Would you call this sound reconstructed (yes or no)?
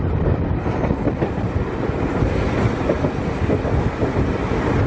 no